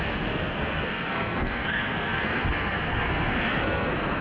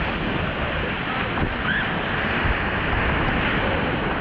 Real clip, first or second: second